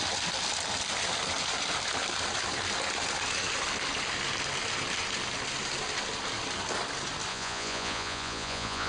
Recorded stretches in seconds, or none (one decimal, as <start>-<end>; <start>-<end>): 0.0-7.3